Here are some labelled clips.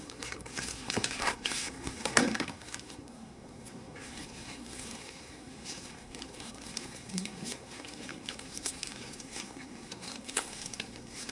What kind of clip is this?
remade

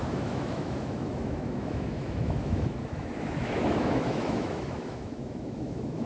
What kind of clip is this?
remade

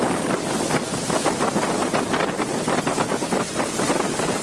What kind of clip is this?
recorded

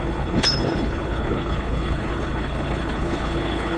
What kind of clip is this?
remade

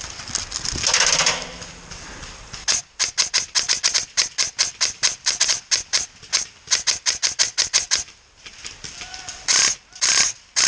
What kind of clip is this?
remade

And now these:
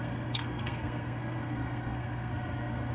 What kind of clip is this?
remade